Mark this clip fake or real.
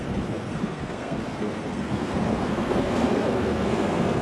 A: fake